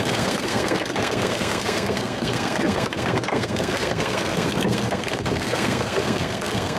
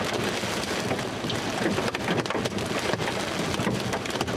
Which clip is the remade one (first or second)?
first